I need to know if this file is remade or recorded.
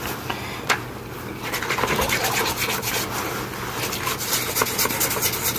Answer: recorded